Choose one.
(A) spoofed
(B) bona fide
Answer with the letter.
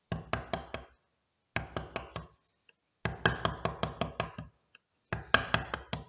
B